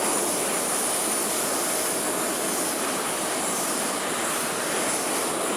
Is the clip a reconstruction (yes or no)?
no